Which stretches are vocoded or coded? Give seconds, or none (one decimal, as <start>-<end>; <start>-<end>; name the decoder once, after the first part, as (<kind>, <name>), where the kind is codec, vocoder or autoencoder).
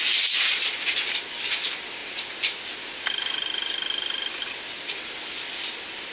none